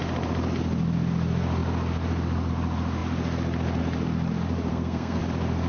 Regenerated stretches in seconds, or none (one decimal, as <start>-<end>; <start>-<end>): 4.7-5.2